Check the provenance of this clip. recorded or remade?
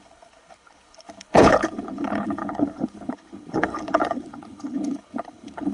remade